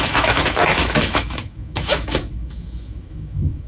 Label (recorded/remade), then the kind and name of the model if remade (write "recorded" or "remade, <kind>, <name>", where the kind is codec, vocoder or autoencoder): remade, autoencoder, DAC-VAE